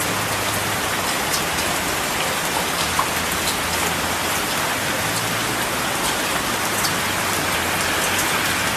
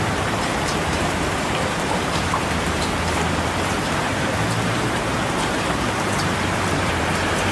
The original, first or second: first